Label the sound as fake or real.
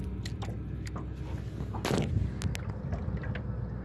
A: real